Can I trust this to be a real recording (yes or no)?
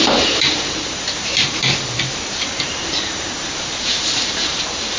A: no